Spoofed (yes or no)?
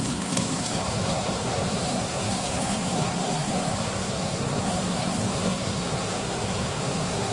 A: yes